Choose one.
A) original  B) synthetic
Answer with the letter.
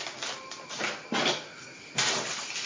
A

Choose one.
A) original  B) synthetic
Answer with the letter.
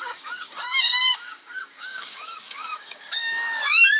B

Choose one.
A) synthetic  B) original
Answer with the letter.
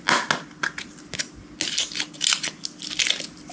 B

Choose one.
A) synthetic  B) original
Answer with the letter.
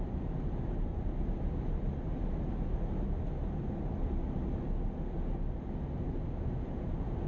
B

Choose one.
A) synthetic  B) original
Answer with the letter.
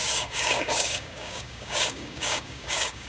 A